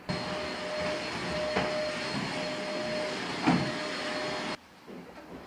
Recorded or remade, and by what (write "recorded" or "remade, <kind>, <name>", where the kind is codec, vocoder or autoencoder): recorded